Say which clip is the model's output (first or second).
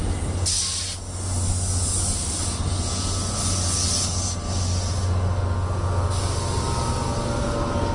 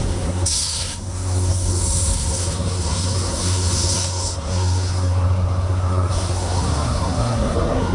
second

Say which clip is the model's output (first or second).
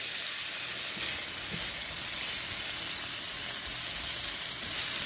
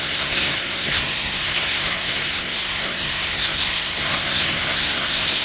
second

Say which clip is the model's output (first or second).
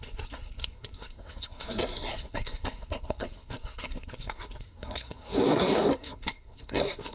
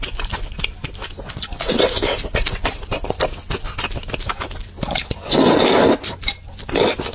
first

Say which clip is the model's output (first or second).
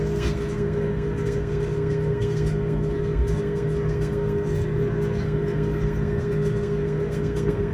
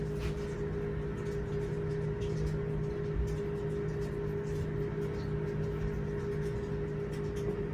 first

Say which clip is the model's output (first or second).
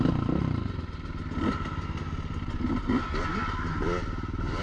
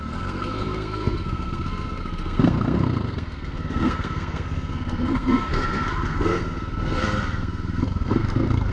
second